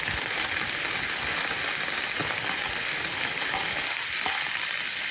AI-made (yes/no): no